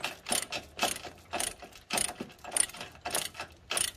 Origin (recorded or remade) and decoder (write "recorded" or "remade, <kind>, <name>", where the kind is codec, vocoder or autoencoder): recorded